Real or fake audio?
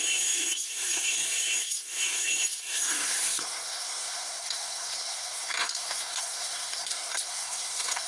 fake